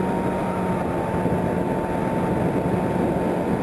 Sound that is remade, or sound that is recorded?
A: recorded